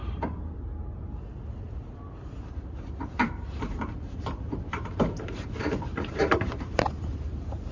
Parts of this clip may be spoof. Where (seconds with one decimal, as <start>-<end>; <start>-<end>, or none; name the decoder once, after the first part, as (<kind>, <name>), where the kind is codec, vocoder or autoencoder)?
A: 2.4-7.7 (vocoder, BigVGAN v2)